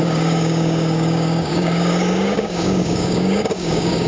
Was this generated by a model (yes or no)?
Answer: yes